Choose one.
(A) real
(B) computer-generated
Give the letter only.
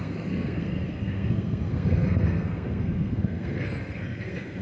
B